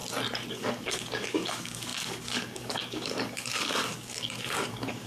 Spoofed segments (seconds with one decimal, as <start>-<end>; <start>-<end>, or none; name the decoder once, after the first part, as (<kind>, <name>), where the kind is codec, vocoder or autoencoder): 0.5-5.1 (codec, DAC)